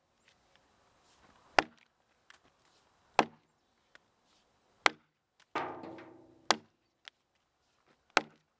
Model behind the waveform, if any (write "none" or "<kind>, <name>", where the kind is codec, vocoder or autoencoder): none